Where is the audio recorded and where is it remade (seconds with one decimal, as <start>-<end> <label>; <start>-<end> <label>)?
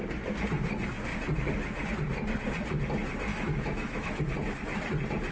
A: 0.0-3.3 recorded; 3.3-4.2 remade; 4.2-5.3 recorded